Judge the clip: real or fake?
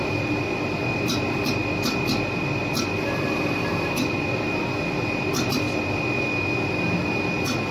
real